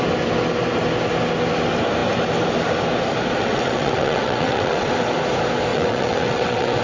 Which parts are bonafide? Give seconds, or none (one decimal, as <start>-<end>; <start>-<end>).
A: 0.0-3.4; 4.9-5.7